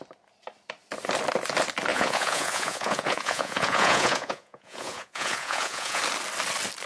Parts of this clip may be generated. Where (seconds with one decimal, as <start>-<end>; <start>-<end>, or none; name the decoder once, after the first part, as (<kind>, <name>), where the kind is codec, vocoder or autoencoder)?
1.9-6.0 (vocoder, Vocos)